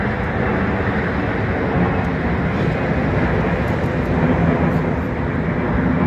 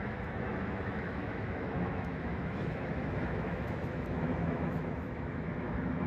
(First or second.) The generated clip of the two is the second